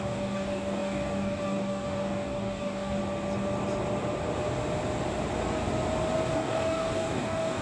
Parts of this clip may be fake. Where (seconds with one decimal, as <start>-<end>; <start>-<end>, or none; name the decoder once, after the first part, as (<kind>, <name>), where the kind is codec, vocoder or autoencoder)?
0.0-3.0 (codec, DAC); 6.3-7.6